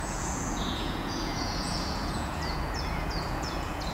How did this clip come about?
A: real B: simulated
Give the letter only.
B